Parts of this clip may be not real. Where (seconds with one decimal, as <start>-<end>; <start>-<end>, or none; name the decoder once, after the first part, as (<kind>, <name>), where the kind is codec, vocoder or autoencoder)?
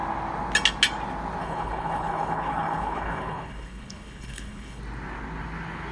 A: 1.4-4.8 (codec, HILCodec)